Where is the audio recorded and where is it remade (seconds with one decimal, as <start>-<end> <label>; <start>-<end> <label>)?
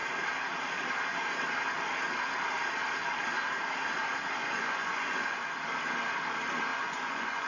0.0-4.4 recorded; 4.4-5.4 remade; 5.4-6.7 recorded; 6.7-7.5 remade